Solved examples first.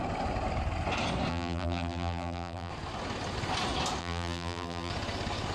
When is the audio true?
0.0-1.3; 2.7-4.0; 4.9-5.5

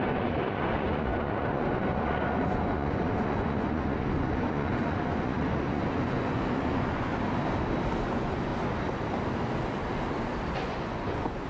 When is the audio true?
7.1-8.0; 8.5-10.5

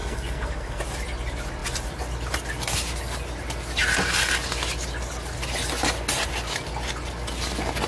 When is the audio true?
0.8-7.9

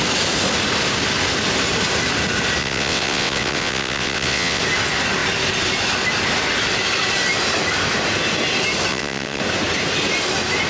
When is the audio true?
0.0-2.6; 4.6-8.9; 9.4-10.7